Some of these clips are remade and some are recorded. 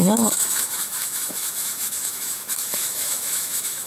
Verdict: remade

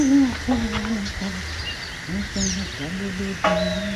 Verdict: recorded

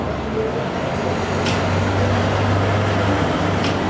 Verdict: recorded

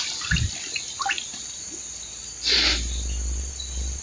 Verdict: recorded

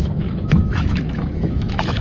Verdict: remade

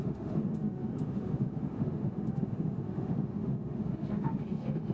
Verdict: remade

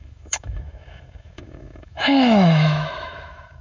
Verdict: remade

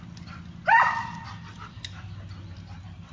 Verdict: recorded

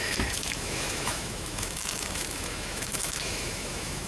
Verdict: remade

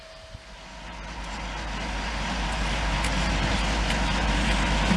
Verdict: recorded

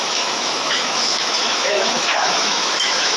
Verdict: remade